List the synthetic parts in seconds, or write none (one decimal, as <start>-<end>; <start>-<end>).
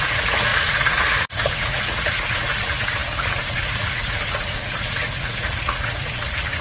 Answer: 0.0-6.6